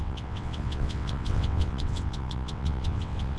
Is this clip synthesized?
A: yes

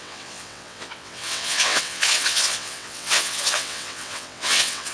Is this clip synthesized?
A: yes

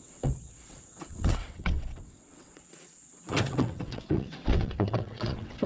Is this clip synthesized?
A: yes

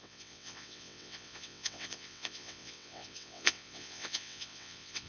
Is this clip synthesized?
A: yes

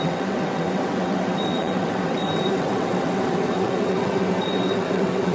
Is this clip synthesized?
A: yes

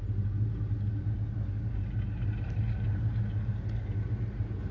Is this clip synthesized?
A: no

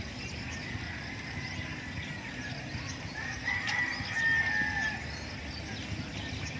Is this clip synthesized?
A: no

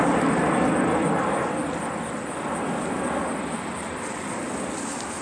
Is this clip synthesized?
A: no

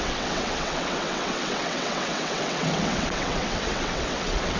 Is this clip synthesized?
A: yes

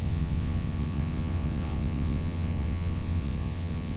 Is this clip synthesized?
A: yes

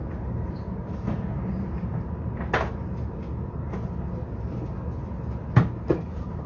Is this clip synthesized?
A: no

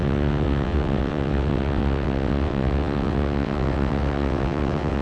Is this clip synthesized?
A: yes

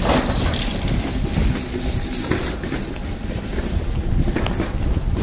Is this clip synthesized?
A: no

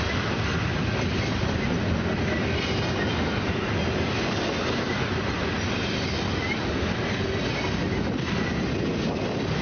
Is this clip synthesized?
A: no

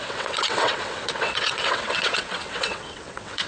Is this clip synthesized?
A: yes